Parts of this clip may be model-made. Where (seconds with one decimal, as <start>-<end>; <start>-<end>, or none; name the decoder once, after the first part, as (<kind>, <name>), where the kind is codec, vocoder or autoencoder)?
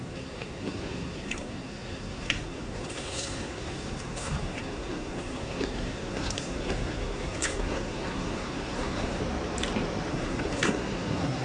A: 0.0-9.2 (codec, SNAC); 10.1-11.4